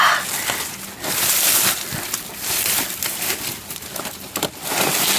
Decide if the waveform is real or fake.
real